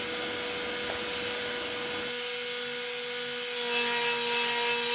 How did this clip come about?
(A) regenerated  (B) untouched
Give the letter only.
B